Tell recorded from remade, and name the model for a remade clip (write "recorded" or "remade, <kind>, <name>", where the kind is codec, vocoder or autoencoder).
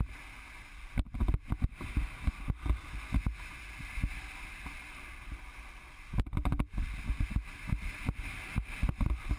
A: recorded